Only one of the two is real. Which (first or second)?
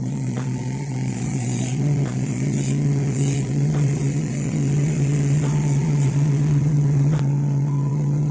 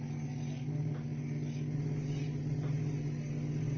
second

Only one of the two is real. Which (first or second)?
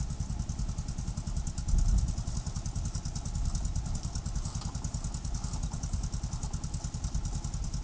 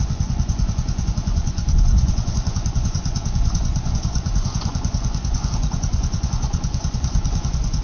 first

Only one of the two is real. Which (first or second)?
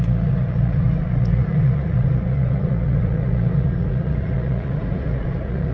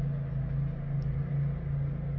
second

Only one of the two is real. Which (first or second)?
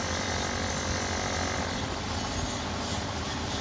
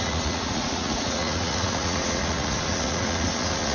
first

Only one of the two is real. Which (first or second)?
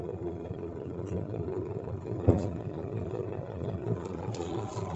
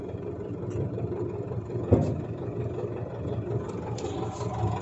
second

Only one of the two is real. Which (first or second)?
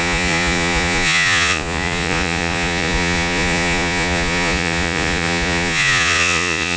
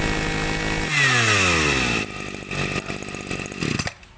second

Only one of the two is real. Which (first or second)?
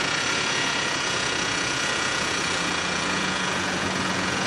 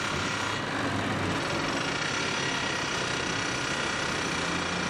second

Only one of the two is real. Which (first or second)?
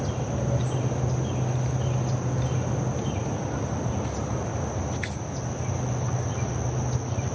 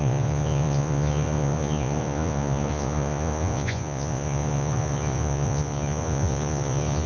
first